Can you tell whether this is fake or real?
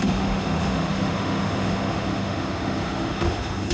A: fake